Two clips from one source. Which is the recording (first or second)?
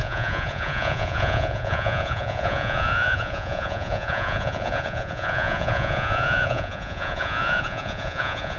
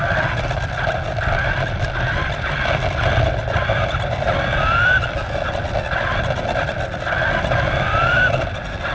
second